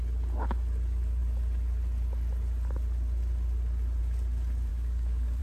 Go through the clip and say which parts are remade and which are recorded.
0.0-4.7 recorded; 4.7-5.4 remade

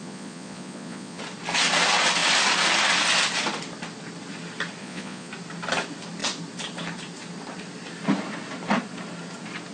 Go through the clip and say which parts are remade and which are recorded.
0.0-1.2 remade; 1.2-4.8 recorded; 4.8-5.3 remade; 5.3-9.7 recorded

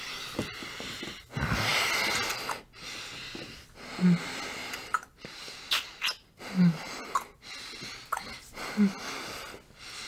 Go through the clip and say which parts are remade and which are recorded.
0.0-4.6 recorded; 4.6-6.0 remade; 6.0-10.1 recorded

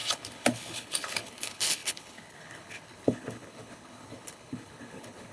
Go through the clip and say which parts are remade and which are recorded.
0.0-5.3 remade

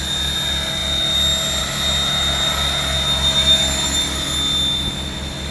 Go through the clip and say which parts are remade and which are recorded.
0.0-5.5 recorded

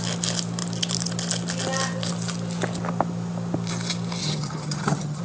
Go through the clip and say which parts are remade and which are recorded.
0.0-4.2 recorded; 4.2-5.2 remade

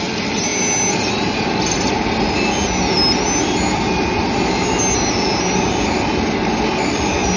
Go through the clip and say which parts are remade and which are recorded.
0.0-7.4 recorded

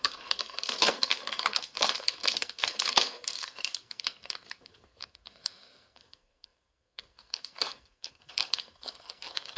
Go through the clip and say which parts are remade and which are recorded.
0.0-9.6 remade